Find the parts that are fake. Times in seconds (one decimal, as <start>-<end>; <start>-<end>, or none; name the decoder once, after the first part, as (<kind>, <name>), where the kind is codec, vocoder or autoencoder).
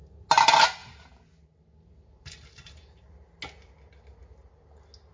0.8-3.1 (vocoder, BigVGAN v2)